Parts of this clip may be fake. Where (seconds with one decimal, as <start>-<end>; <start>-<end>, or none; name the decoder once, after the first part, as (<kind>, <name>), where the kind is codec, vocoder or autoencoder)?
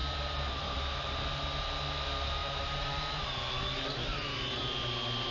0.0-1.2 (vocoder, BigVGAN v2); 2.4-3.3; 4.1-4.6